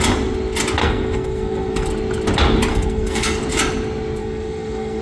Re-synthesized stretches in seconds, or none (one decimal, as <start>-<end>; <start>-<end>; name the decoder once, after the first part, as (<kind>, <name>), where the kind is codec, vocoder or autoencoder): 0.8-1.9 (codec, SNAC); 2.7-3.4; 4.2-5.0